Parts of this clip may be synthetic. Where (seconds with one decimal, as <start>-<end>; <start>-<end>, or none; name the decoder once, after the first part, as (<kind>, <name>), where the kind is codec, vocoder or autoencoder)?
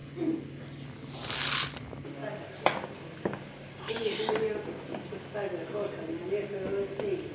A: none